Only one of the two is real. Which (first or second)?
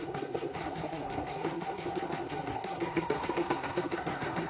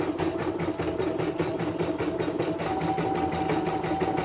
second